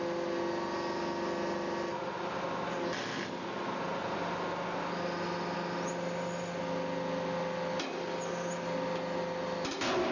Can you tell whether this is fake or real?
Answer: real